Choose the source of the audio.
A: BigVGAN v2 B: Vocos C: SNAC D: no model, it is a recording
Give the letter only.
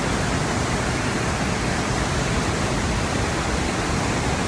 D